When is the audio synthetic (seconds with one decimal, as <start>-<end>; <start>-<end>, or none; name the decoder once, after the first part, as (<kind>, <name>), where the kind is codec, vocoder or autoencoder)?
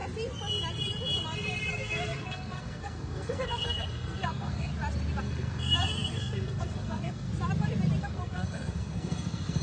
1.7-4.7 (codec, SNAC); 5.2-7.3; 8.0-9.6